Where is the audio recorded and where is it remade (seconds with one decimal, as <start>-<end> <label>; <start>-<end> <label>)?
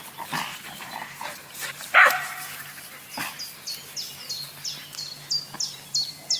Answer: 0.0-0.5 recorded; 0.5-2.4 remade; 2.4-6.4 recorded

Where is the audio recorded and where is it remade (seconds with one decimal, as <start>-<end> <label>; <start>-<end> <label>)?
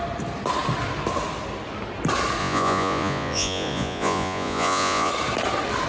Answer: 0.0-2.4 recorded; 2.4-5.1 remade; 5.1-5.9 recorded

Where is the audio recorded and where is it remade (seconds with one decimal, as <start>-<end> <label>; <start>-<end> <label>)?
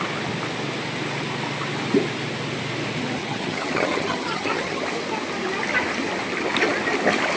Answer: 0.0-3.2 recorded; 3.2-4.8 remade; 4.8-7.4 recorded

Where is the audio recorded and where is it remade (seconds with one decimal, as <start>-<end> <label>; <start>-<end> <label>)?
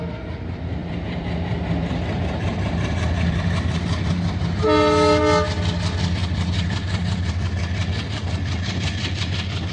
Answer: 0.0-0.8 recorded; 0.8-4.4 remade; 4.4-6.2 recorded; 6.2-7.3 remade; 7.3-7.8 recorded; 7.8-9.2 remade; 9.2-9.7 recorded